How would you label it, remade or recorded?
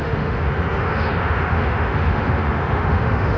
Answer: remade